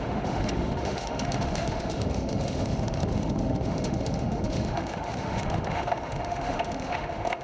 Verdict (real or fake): fake